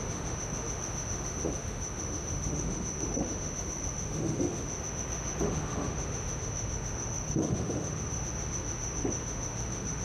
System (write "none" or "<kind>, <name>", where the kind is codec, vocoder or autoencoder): autoencoder, DAC-VAE